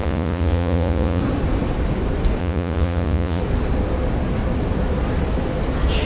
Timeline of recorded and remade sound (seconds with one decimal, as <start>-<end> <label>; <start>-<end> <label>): 0.0-1.2 remade; 1.2-2.4 recorded; 2.4-3.4 remade; 3.4-6.1 recorded